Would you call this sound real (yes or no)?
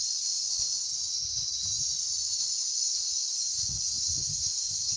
yes